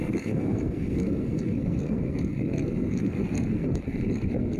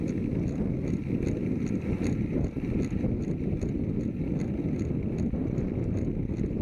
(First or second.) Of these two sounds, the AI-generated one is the first